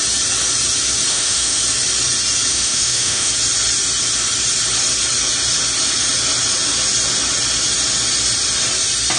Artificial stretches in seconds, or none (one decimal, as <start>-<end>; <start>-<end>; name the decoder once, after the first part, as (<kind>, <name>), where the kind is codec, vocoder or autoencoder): 1.1-1.6 (autoencoder, DAC-VAE); 2.5-3.3